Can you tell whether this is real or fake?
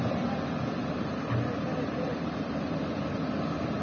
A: real